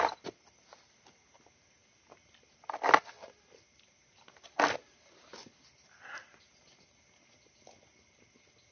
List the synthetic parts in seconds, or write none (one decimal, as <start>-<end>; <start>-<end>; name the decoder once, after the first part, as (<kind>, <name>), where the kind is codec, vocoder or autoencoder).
none